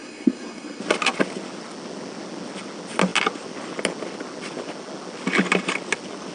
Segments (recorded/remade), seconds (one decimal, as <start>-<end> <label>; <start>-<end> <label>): 0.0-0.8 remade; 0.8-6.3 recorded